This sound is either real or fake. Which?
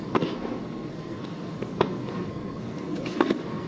fake